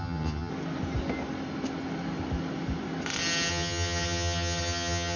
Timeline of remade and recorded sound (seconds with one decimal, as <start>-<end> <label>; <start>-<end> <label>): 0.0-0.5 remade; 0.5-3.5 recorded; 3.5-5.2 remade